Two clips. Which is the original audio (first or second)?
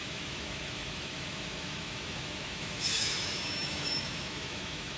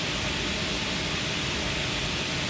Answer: second